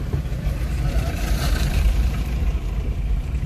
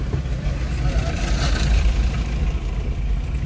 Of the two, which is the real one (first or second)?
second